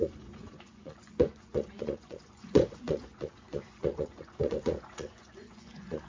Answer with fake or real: fake